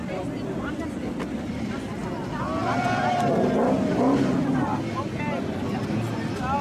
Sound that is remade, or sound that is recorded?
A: recorded